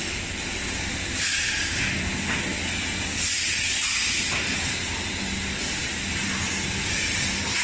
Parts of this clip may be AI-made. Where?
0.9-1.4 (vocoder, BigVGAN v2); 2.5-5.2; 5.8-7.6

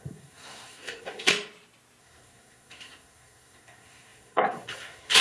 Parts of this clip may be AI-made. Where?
0.0-1.3 (codec, SNAC); 2.0-5.2